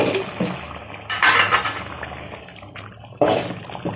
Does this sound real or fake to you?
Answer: real